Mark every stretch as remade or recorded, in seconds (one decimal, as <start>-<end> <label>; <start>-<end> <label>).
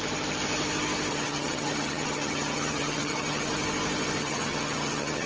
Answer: 0.0-1.1 recorded; 1.1-3.5 remade; 3.5-4.2 recorded; 4.2-5.3 remade